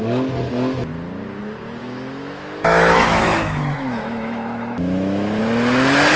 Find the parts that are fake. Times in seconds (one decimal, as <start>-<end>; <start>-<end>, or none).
1.8-5.4